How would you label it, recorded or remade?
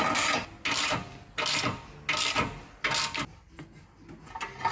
recorded